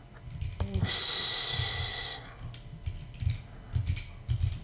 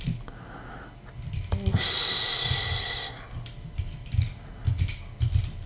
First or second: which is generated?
second